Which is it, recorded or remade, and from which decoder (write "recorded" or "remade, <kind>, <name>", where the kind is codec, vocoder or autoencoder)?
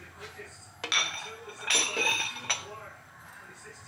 recorded